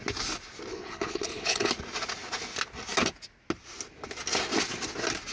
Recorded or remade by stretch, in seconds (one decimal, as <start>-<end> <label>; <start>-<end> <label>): 0.0-0.7 recorded; 0.7-1.7 remade; 1.7-5.3 recorded